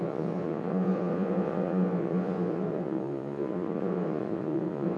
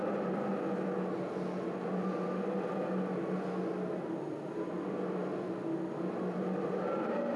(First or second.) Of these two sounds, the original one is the second